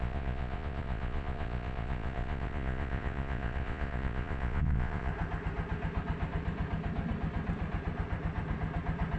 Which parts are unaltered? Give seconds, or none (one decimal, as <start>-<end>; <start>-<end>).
5.1-9.2